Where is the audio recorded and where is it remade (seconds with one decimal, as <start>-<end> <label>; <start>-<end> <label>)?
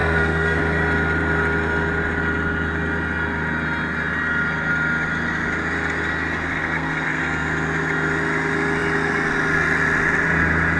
0.0-0.6 remade; 0.6-6.6 recorded; 6.6-7.2 remade; 7.2-10.8 recorded